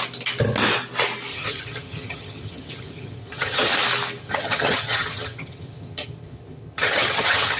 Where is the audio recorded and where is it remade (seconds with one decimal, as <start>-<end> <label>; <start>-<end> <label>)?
0.0-1.3 recorded; 1.3-3.7 remade; 3.7-4.2 recorded; 4.2-7.6 remade